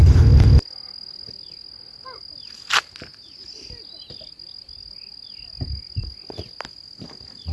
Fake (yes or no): no